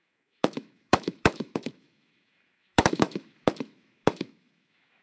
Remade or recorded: remade